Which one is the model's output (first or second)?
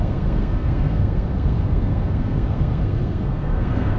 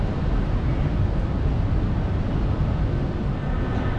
first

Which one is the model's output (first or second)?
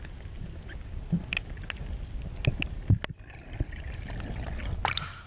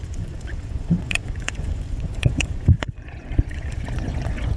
second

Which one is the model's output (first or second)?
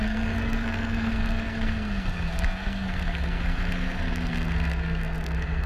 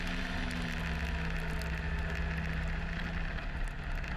first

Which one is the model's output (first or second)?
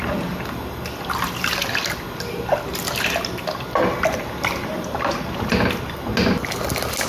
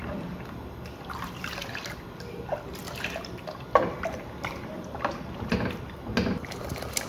second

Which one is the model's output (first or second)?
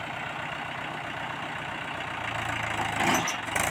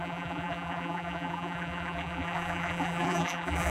second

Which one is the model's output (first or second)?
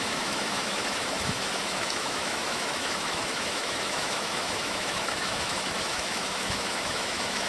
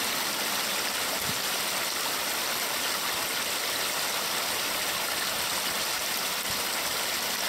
first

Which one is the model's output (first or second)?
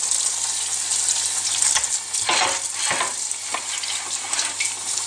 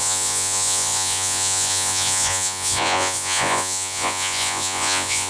second